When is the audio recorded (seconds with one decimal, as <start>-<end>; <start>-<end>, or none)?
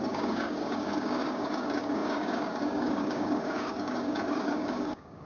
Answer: none